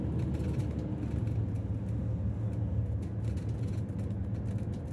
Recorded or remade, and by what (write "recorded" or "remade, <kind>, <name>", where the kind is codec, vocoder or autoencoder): recorded